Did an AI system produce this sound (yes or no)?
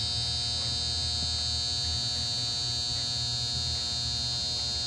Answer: no